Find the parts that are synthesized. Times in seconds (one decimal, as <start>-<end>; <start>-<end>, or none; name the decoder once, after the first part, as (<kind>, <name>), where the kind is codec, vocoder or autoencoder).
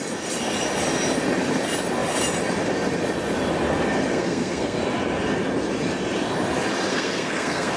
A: 4.1-4.8 (codec, SNAC); 6.9-7.8